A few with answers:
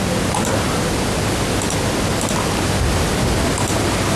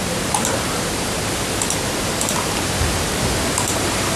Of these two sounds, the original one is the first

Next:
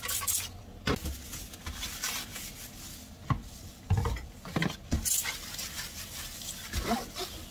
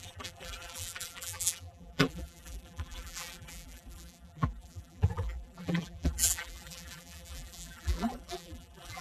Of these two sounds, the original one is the first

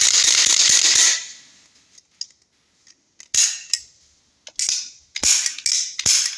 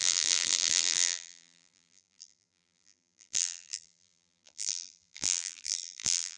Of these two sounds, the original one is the first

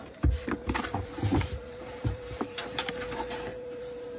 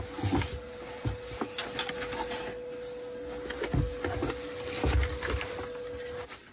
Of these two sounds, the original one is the second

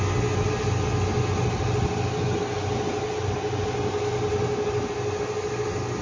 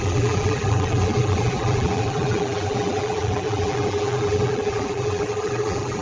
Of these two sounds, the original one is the first